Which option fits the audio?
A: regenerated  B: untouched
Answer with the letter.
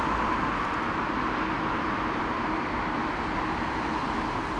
B